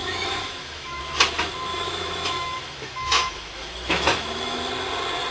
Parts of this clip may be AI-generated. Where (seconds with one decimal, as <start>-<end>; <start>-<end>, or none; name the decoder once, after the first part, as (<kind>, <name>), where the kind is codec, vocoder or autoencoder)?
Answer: 0.0-1.0 (autoencoder, DAC-VAE); 1.7-4.6